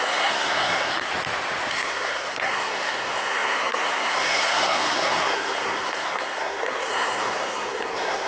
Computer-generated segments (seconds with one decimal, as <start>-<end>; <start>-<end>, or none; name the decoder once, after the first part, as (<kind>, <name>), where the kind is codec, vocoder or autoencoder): 0.0-1.1 (codec, SNAC); 1.7-8.3